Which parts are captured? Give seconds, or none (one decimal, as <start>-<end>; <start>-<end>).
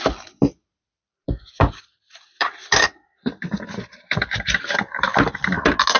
0.0-1.0; 4.6-6.0